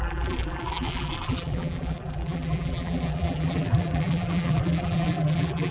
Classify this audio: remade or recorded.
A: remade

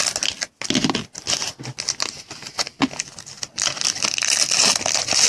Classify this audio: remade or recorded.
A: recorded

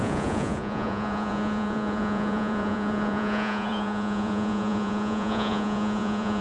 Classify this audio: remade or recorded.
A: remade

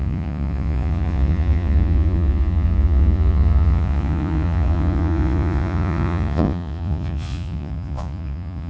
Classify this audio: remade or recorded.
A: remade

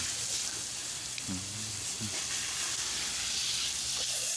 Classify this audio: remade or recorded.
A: recorded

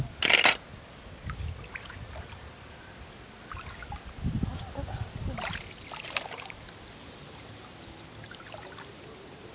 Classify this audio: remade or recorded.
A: recorded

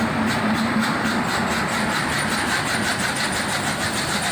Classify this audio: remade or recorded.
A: remade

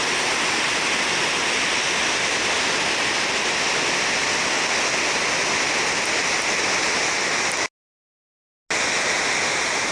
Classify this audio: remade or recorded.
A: recorded